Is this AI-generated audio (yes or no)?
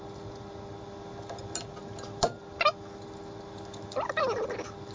no